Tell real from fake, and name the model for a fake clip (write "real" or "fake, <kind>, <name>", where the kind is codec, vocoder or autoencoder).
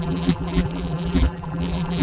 fake, vocoder, BigVGAN v2